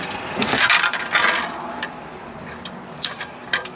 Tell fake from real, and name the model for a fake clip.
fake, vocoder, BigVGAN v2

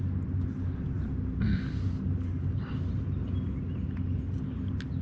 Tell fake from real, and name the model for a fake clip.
real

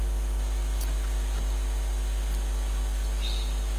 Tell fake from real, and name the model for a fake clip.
real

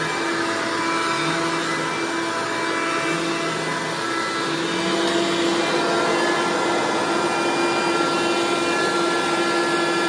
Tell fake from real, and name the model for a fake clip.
real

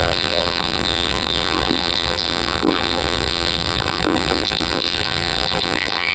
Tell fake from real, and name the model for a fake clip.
fake, vocoder, BigVGAN v2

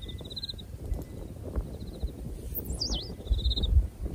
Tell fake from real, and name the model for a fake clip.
real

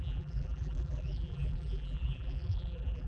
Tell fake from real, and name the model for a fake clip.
fake, vocoder, BigVGAN v2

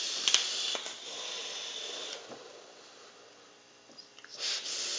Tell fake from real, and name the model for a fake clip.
real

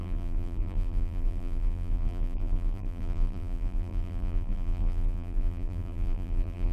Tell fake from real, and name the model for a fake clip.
fake, vocoder, BigVGAN v2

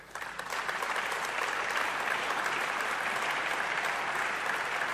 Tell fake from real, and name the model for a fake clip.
fake, vocoder, BigVGAN v2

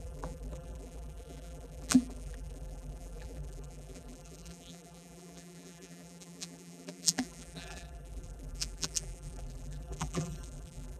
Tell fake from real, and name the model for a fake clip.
fake, vocoder, BigVGAN v2